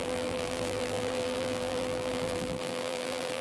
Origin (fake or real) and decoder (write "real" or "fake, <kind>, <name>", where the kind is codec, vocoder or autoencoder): fake, vocoder, BigVGAN v2